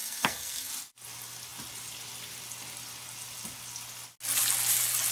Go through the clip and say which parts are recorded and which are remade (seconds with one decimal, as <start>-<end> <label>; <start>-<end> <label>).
0.0-0.7 remade; 0.7-5.1 recorded